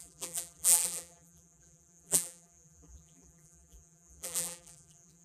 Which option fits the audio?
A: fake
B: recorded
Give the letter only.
A